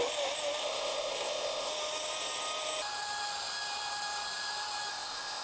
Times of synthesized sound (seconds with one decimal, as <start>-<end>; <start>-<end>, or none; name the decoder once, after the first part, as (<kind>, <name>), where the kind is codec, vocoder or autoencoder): 0.6-1.7 (codec, ZipCodec); 4.9-5.4